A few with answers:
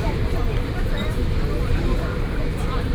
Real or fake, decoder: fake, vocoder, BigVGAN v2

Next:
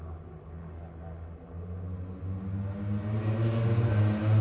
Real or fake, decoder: real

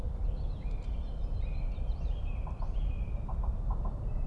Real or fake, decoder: fake, vocoder, BigVGAN v2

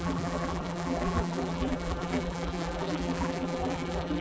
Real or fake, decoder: fake, vocoder, BigVGAN v2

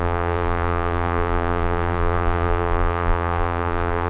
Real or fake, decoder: fake, vocoder, BigVGAN v2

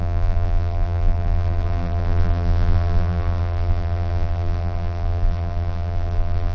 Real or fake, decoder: fake, vocoder, BigVGAN v2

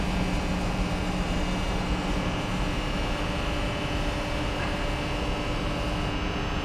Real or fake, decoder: real